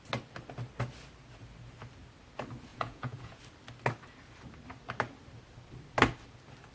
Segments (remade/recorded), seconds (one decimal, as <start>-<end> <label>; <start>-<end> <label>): 0.0-2.7 recorded; 2.7-3.4 remade; 3.4-6.7 recorded